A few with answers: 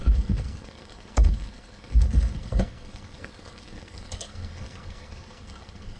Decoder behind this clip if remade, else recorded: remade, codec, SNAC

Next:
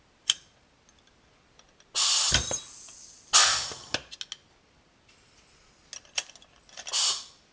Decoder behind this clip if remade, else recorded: recorded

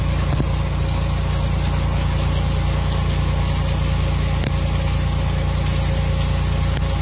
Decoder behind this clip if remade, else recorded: recorded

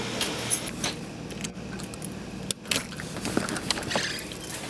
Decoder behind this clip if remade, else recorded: recorded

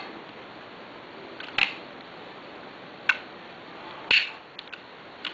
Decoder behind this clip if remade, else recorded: recorded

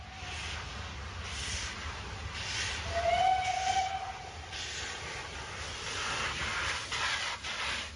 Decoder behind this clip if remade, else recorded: recorded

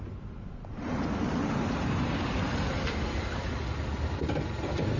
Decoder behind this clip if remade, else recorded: remade, vocoder, BigVGAN v2